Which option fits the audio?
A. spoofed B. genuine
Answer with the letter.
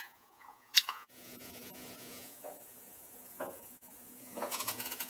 A